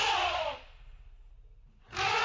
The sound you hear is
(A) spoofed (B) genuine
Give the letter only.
B